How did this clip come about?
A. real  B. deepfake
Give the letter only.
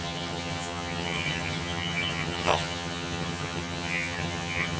B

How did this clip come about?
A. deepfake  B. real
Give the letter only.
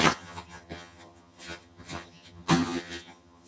A